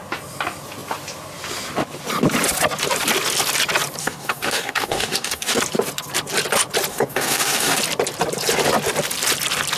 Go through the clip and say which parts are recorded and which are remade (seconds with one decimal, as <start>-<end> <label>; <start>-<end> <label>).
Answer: 0.0-4.0 recorded; 4.0-5.6 remade; 5.6-6.9 recorded; 6.9-7.8 remade; 7.8-9.8 recorded